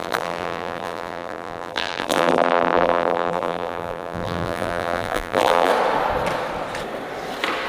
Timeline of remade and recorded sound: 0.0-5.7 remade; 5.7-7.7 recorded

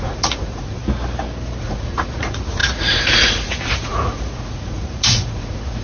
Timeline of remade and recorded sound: 0.0-0.8 remade; 0.8-1.6 recorded; 1.6-5.8 remade

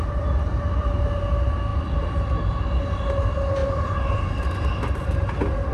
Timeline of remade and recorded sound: 0.0-3.6 recorded; 3.6-5.2 remade; 5.2-5.7 recorded

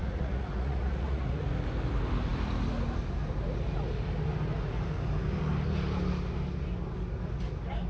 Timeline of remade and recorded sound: 0.0-1.4 remade; 1.4-7.9 recorded